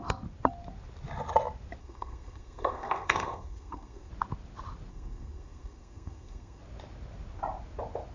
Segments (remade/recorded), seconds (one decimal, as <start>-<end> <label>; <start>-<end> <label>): 0.0-1.8 recorded; 1.8-4.1 remade; 4.1-4.9 recorded; 4.9-6.6 remade; 6.6-8.1 recorded